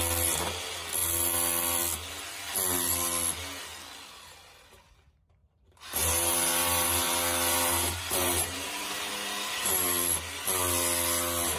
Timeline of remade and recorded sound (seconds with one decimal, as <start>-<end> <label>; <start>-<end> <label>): 0.0-5.4 recorded; 5.4-9.7 remade; 9.7-11.6 recorded